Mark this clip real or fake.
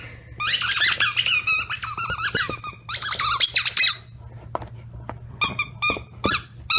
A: real